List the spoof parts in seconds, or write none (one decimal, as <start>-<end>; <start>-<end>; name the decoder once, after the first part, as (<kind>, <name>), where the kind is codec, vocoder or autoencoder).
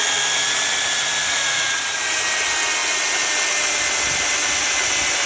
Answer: 1.2-1.8 (vocoder, Vocos)